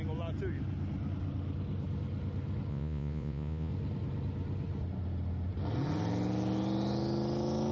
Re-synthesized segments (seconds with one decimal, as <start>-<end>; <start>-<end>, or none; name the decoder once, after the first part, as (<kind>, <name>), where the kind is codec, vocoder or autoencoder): 2.7-3.7 (vocoder, Vocos)

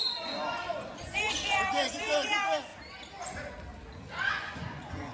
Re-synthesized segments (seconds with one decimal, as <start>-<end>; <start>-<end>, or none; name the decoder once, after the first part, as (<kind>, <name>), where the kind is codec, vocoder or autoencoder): 0.0-2.7 (vocoder, Vocos); 4.3-5.1